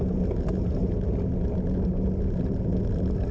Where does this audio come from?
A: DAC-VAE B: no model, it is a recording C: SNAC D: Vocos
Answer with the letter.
B